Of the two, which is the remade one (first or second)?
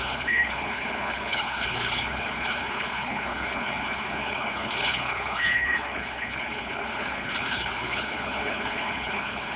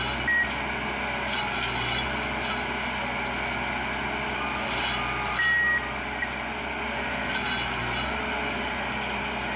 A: first